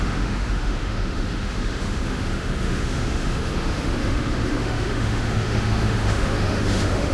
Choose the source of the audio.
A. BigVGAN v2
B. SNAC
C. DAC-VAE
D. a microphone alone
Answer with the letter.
C